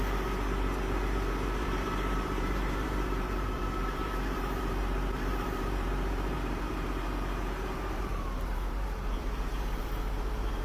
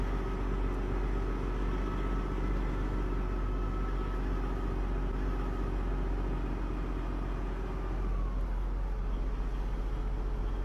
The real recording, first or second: second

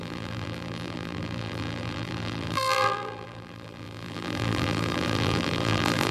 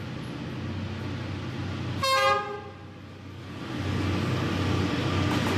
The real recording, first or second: second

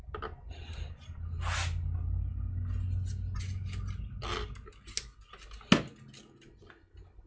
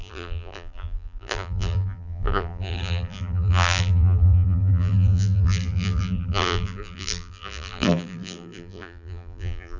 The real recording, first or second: first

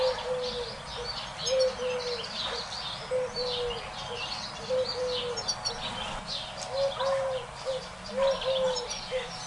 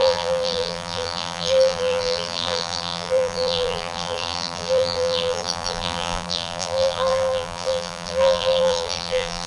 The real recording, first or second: first